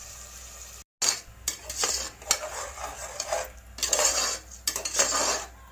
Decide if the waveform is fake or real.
real